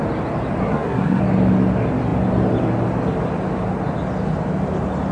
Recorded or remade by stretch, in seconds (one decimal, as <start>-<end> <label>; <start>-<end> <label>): 0.0-0.6 recorded; 0.6-1.2 remade; 1.2-5.1 recorded